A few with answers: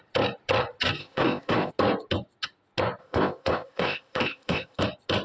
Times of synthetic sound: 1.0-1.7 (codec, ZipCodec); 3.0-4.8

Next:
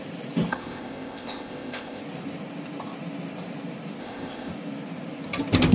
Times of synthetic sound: 0.5-2.0 (codec, ZipCodec); 4.0-4.5

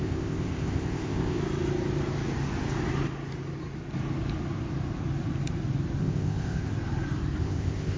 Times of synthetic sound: 0.0-1.4 (codec, ZipCodec); 6.0-6.7; 7.4-8.0

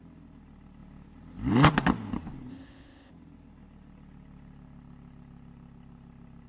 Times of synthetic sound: 2.5-3.1 (codec, ZipCodec)

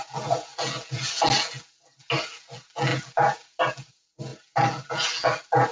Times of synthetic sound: none

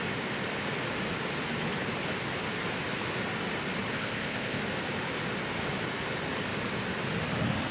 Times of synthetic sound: 3.9-4.6 (codec, ZipCodec)

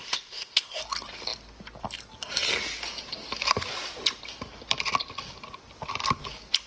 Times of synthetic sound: 0.0-0.8 (codec, ZipCodec)

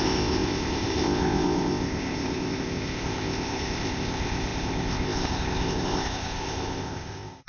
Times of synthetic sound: 0.0-7.5 (codec, ZipCodec)